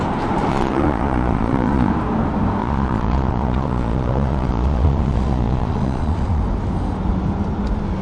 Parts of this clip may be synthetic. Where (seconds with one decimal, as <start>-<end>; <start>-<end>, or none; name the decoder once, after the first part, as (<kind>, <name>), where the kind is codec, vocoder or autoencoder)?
0.5-1.9 (vocoder, Vocos); 2.6-6.4